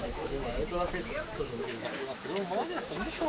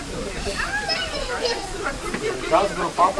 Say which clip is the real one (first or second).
second